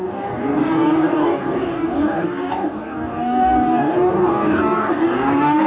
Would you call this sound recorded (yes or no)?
no